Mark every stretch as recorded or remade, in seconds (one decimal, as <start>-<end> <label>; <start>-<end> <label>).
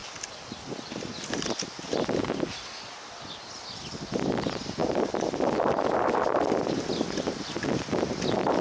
0.0-8.6 recorded